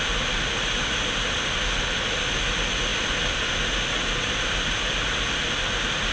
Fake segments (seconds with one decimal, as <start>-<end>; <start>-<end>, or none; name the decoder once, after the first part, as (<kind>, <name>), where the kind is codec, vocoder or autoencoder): none